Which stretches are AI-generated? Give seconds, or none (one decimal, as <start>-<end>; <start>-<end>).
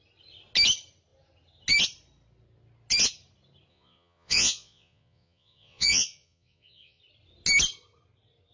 3.7-7.0